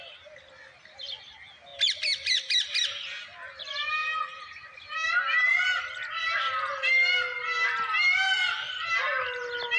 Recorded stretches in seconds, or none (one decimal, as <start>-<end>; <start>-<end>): 0.0-9.8